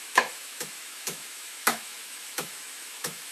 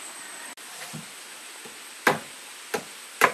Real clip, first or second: second